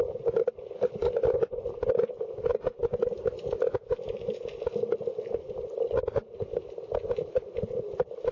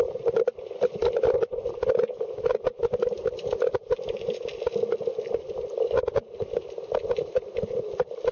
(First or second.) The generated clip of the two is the second